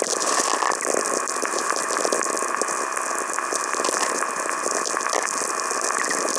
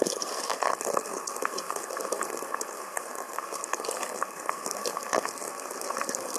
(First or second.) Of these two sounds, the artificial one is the second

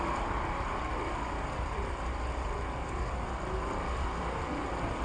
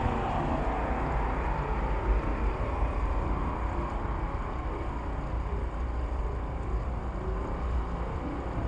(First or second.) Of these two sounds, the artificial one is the first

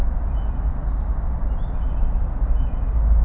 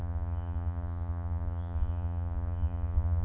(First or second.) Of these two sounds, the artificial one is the second